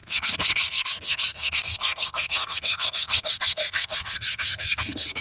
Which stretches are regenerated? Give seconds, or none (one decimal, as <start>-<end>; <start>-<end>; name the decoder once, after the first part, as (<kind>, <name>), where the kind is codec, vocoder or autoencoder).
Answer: 0.0-5.2 (codec, SNAC)